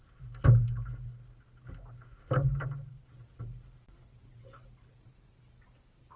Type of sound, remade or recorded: recorded